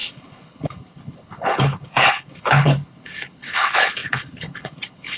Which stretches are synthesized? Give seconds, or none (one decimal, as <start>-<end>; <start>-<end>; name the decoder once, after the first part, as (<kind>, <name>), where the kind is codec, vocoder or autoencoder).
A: 0.0-5.2 (codec, HILCodec)